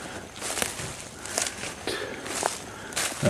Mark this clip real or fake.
real